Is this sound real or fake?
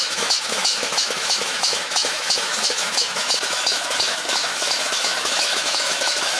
fake